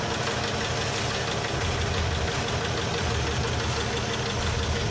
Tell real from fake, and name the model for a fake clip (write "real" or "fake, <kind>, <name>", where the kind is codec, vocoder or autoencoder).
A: real